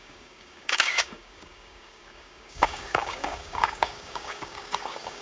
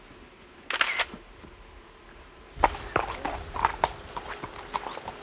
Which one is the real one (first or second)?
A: second